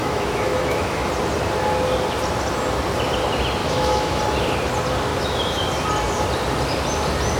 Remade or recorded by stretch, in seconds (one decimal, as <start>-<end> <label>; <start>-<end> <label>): 0.0-1.1 remade; 1.1-3.6 recorded; 3.6-4.2 remade; 4.2-5.1 recorded; 5.1-5.6 remade; 5.6-7.4 recorded